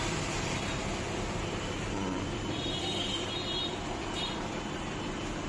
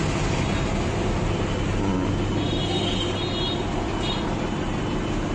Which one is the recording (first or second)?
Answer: second